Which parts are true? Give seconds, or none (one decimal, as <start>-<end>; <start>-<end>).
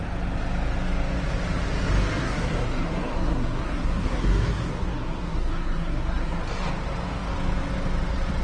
0.0-2.2; 6.4-8.4